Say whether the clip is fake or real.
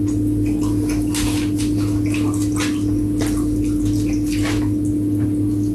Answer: real